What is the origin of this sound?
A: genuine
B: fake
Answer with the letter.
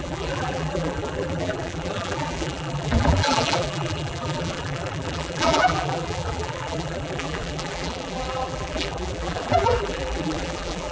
B